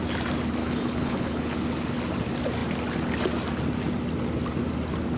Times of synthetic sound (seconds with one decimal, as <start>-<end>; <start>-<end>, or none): 0.6-1.4